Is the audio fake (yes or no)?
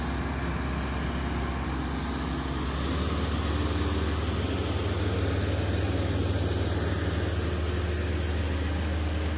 no